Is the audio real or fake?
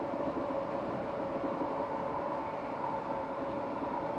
real